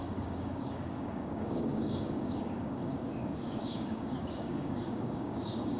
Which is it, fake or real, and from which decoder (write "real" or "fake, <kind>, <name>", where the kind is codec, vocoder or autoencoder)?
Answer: fake, codec, DAC